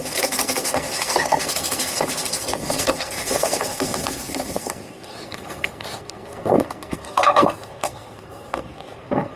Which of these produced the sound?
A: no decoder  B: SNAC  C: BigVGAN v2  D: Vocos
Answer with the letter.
B